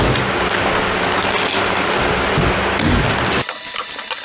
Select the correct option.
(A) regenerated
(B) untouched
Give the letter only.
B